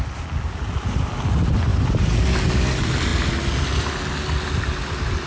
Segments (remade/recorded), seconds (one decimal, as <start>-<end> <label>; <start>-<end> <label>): 0.0-5.3 recorded